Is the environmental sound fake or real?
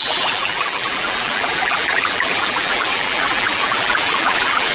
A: fake